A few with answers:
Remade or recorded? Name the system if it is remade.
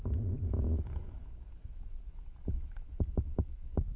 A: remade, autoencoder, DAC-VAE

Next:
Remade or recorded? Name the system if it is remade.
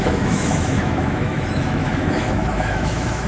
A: remade, autoencoder, DAC-VAE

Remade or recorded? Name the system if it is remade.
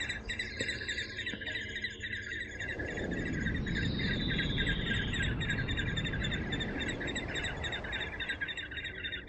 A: recorded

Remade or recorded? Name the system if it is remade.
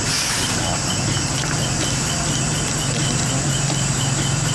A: recorded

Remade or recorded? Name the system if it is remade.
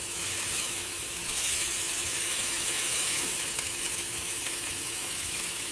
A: remade, autoencoder, DAC-VAE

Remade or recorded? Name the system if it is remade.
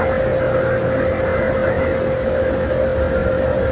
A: recorded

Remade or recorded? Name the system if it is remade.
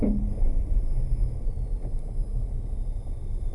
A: recorded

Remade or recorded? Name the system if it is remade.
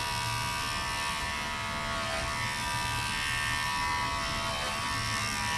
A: recorded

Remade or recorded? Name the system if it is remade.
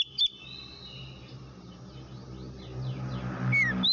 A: recorded